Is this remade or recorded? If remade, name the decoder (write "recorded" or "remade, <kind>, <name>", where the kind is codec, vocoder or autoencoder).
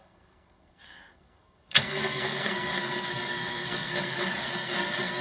remade, codec, SNAC